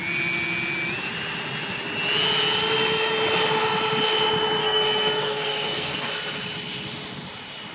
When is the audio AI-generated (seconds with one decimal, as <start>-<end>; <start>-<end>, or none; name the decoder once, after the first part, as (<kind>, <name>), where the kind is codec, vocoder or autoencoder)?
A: 4.6-6.1 (codec, SNAC)